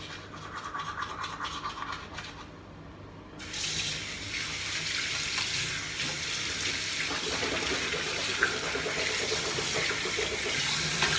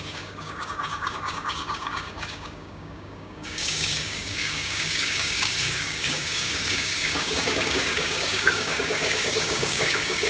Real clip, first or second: first